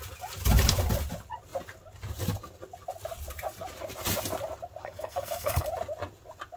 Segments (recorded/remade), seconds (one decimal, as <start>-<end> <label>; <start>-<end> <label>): 0.0-4.8 recorded; 4.8-5.7 remade; 5.7-6.6 recorded